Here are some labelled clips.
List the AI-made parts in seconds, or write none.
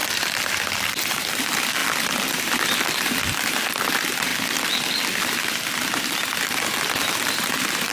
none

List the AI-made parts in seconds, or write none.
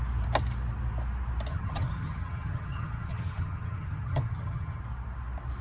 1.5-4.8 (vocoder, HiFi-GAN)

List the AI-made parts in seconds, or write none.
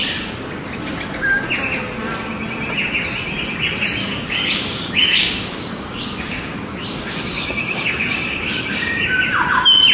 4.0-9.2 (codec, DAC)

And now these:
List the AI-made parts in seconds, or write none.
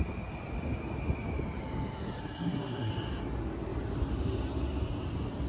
2.2-2.9 (codec, SNAC)